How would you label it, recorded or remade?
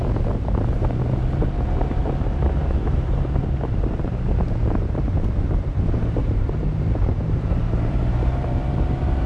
remade